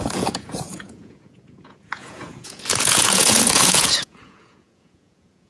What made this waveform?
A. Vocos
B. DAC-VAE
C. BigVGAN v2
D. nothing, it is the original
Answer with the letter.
A